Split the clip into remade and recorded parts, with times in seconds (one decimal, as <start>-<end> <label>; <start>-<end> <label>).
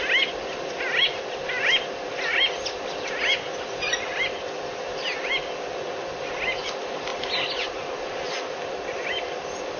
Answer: 0.0-9.8 recorded